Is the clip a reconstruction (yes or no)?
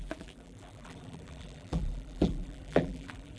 yes